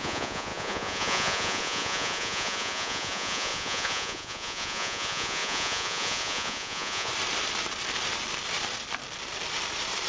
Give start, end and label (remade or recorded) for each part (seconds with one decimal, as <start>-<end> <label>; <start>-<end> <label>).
0.0-7.1 remade; 7.1-10.1 recorded